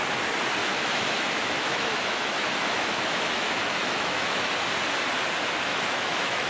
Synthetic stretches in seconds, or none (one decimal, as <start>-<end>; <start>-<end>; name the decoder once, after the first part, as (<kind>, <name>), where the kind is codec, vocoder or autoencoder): 0.6-4.5 (autoencoder, DAC-VAE); 5.7-6.5